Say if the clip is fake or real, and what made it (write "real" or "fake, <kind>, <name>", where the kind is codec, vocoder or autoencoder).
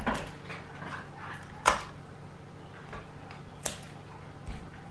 real